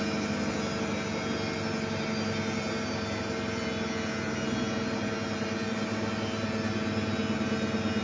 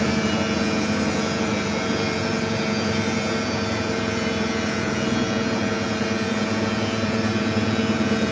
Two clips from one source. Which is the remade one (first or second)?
second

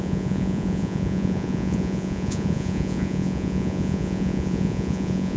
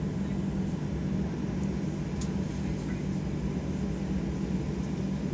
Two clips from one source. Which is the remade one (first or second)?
first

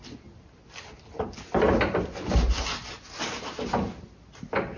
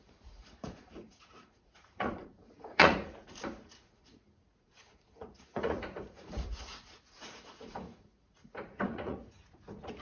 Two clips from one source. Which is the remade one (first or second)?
second